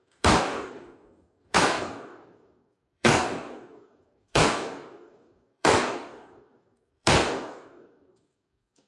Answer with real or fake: fake